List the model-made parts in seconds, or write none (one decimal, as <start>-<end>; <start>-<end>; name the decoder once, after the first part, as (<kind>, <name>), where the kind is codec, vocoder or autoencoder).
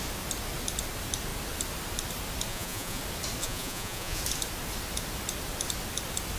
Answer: 2.5-3.0 (vocoder, Vocos); 3.4-4.2